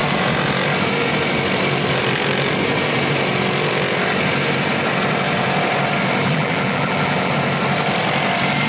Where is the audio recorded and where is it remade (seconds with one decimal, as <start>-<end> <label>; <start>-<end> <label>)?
0.0-6.2 recorded; 6.2-7.3 remade; 7.3-8.7 recorded